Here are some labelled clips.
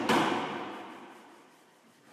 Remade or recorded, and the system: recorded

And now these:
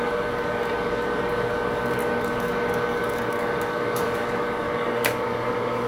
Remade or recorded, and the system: remade, codec, DAC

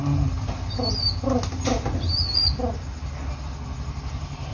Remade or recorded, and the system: recorded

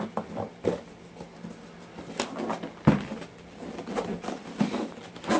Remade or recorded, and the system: recorded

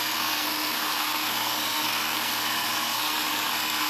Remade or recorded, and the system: remade, codec, SNAC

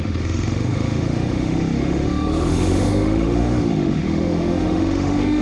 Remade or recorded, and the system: remade, autoencoder, DAC-VAE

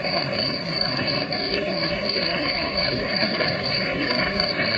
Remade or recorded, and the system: remade, codec, SNAC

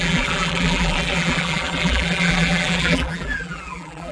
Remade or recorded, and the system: remade, vocoder, BigVGAN v2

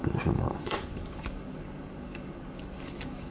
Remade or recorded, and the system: remade, codec, DAC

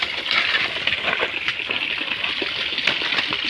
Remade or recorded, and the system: recorded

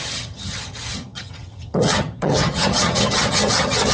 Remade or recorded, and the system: remade, vocoder, HiFi-GAN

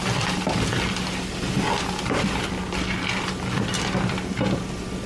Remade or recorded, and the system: recorded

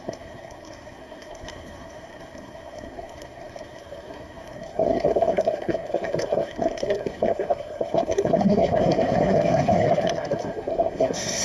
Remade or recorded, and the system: remade, codec, SNAC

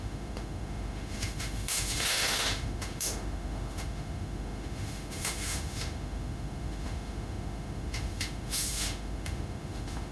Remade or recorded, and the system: remade, autoencoder, DAC-VAE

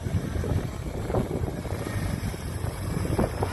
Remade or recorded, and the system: remade, vocoder, BigVGAN v2